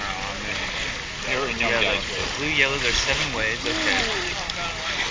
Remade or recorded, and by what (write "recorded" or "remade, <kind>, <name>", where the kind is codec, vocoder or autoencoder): recorded